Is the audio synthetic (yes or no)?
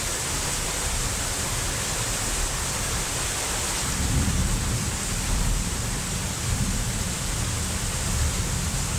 yes